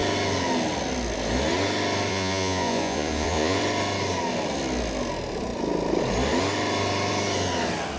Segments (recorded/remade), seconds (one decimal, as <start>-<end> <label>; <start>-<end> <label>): 0.0-2.1 recorded; 2.1-3.6 remade; 3.6-8.0 recorded